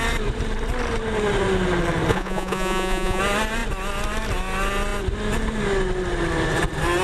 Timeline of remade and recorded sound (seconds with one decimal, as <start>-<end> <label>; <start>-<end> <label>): 0.0-2.1 recorded; 2.1-3.2 remade; 3.2-7.0 recorded